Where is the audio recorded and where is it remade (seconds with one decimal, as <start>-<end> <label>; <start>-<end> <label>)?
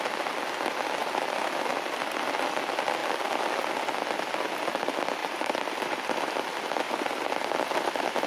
0.0-1.0 recorded; 1.0-2.5 remade; 2.5-3.0 recorded; 3.0-3.5 remade; 3.5-5.2 recorded; 5.2-7.0 remade; 7.0-8.3 recorded